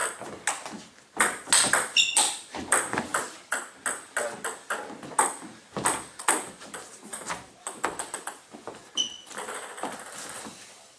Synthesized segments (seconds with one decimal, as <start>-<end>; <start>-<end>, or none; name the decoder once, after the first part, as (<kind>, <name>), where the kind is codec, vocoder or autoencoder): 1.7-3.1 (vocoder, BigVGAN v2); 7.6-8.8; 9.3-11.0